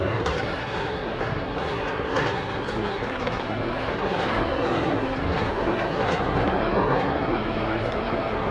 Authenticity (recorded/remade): remade